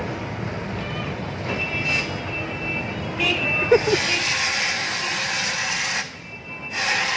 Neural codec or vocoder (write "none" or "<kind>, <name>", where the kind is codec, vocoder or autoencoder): none